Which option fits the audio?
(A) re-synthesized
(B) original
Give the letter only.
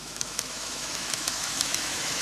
A